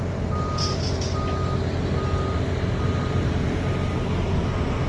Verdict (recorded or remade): recorded